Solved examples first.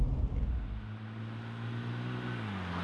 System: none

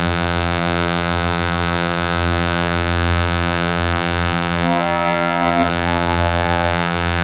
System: vocoder, BigVGAN v2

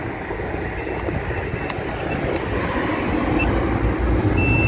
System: none